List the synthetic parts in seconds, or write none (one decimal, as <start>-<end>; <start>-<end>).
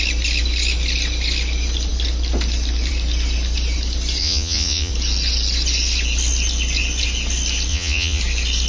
4.2-4.9; 7.7-8.2